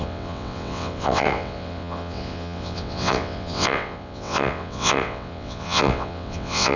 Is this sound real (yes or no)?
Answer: no